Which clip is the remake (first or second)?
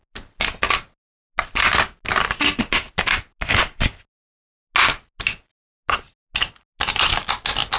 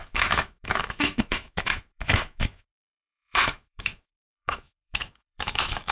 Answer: second